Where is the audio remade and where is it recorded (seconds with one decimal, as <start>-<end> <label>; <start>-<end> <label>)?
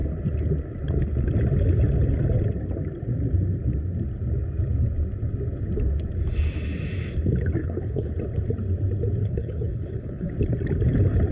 0.0-7.6 recorded; 7.6-8.1 remade; 8.1-9.2 recorded; 9.2-10.3 remade; 10.3-11.3 recorded